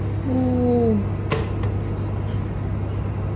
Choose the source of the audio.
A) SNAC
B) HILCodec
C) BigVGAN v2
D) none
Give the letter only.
D